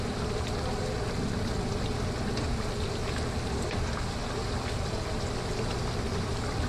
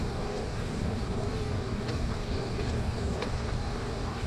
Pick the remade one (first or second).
second